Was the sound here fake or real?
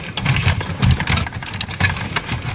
real